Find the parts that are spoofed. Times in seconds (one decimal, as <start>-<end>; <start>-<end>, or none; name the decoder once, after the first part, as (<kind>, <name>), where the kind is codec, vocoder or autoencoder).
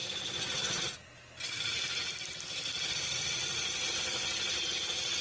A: none